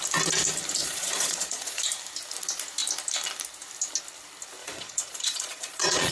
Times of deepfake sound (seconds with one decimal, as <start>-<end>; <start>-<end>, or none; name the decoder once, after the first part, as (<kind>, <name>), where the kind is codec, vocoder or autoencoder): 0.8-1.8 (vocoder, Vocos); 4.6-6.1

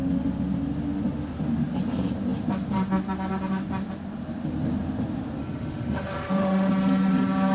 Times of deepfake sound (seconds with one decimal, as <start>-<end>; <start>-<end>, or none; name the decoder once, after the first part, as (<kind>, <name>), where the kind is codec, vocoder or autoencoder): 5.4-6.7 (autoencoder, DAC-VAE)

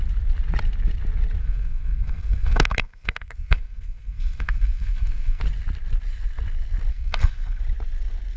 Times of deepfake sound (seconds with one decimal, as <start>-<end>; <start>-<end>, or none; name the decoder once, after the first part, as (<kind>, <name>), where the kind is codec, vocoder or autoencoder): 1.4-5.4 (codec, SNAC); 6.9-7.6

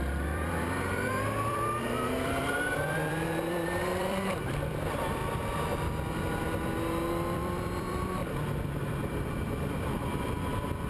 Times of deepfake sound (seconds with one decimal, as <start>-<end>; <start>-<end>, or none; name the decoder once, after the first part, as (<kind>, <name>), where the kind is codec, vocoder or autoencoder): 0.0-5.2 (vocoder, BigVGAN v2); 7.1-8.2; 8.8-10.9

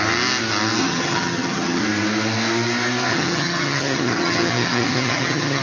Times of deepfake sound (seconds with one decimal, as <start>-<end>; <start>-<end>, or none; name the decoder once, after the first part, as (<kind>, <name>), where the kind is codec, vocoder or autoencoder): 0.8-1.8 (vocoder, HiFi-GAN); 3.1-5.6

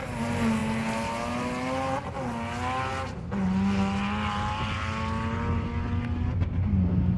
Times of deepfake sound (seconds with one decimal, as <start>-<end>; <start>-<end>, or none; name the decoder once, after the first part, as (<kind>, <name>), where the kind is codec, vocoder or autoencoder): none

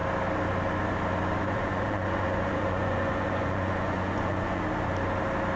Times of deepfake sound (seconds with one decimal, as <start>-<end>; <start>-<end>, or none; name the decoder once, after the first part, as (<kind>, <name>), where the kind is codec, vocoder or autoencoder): 1.4-4.6 (vocoder, Vocos)